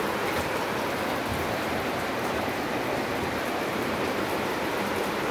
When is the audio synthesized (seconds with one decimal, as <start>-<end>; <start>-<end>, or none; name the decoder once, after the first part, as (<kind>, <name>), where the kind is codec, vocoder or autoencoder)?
none